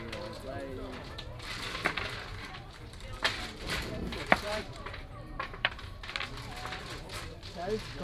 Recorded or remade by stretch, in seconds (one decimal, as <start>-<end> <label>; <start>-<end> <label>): 0.0-2.3 recorded; 2.3-6.0 remade; 6.0-8.0 recorded